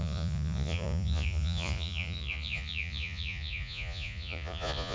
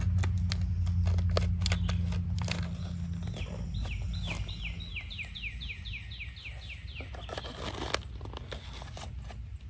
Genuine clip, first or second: second